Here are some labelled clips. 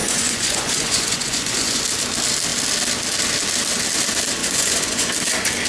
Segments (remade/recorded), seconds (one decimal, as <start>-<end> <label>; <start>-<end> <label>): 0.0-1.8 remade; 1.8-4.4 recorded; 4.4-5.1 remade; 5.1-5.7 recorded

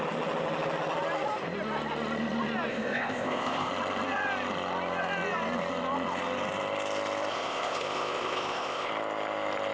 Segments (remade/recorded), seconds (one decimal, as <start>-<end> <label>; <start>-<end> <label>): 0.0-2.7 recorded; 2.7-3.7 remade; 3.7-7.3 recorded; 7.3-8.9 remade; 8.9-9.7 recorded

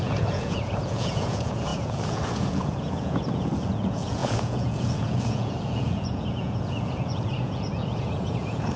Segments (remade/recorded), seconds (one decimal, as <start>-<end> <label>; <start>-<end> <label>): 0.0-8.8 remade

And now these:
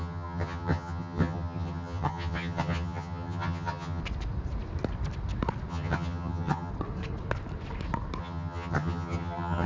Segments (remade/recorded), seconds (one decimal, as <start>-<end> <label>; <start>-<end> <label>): 0.0-4.0 remade; 4.0-5.7 recorded; 5.7-6.7 remade; 6.7-8.2 recorded; 8.2-9.7 remade

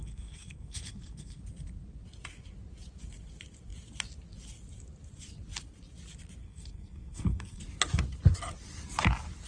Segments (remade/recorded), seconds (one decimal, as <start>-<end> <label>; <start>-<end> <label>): 0.0-1.4 remade; 1.4-6.4 recorded; 6.4-7.6 remade; 7.6-9.5 recorded

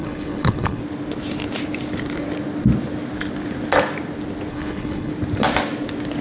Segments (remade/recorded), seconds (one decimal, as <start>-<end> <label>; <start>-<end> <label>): 0.0-0.8 remade; 0.8-4.5 recorded; 4.5-5.1 remade; 5.1-6.2 recorded